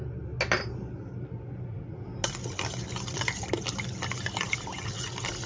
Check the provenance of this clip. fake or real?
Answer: real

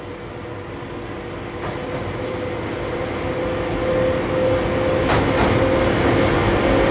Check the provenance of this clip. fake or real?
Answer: real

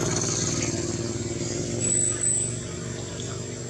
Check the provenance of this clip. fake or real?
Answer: real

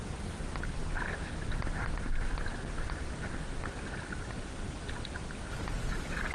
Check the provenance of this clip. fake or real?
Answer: real